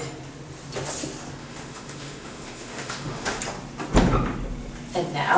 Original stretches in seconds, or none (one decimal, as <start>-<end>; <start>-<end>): 0.0-1.4; 3.4-5.4